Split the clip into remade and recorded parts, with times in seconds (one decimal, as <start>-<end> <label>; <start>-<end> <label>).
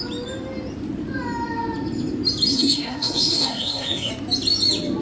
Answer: 0.0-2.5 recorded; 2.5-4.1 remade; 4.1-5.0 recorded